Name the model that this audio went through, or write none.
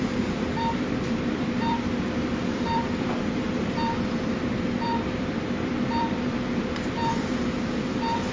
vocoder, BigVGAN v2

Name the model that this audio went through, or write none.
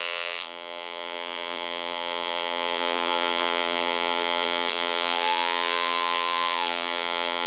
vocoder, BigVGAN v2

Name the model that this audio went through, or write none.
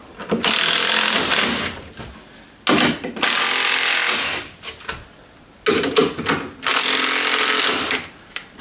none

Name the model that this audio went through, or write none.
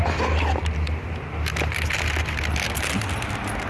none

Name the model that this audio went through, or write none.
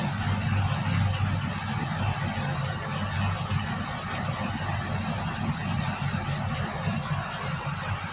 none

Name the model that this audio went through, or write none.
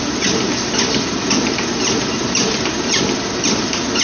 none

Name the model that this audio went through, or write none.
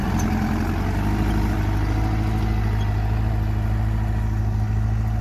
none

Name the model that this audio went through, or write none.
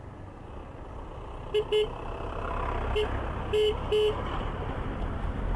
none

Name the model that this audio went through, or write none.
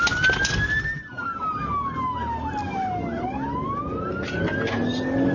none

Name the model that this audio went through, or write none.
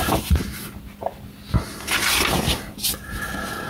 none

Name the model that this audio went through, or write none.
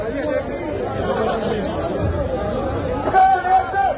none